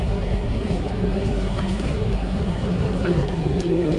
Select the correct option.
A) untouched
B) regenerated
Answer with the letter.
B